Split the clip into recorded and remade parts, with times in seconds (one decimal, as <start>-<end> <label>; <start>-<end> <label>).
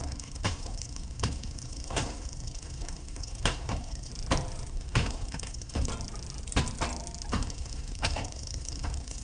0.0-4.1 remade; 4.1-4.7 recorded; 4.7-5.9 remade; 5.9-7.3 recorded; 7.3-9.2 remade